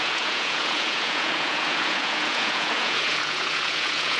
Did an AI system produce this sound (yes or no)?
yes